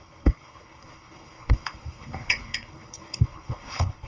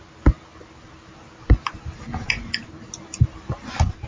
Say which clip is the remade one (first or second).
first